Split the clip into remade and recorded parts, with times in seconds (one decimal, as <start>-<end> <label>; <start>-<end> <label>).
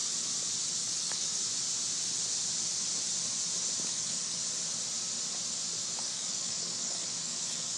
0.0-0.8 recorded; 0.8-1.4 remade; 1.4-3.9 recorded; 3.9-4.4 remade; 4.4-6.0 recorded; 6.0-7.8 remade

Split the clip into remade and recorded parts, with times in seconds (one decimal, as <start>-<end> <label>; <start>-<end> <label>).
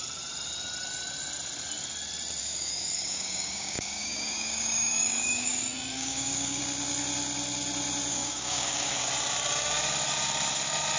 0.0-2.4 recorded; 2.4-6.6 remade; 6.6-8.1 recorded; 8.1-9.1 remade; 9.1-11.0 recorded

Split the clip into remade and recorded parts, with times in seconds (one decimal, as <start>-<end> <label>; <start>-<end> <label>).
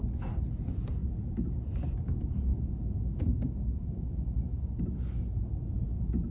0.0-2.5 recorded; 2.5-4.8 remade; 4.8-6.3 recorded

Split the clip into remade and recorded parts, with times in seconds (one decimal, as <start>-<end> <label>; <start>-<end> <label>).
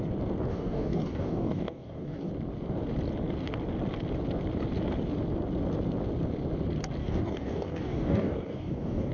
0.0-0.5 recorded; 0.5-2.3 remade; 2.3-7.0 recorded; 7.0-9.1 remade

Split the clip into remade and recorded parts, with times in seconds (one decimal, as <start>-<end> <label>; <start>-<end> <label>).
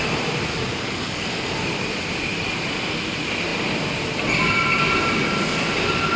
0.0-0.5 recorded; 0.5-1.5 remade; 1.5-6.2 recorded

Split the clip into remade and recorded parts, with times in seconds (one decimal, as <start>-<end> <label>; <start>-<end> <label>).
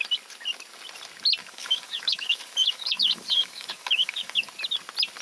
0.0-1.4 recorded; 1.4-4.5 remade; 4.5-5.2 recorded